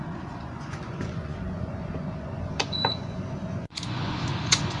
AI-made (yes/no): yes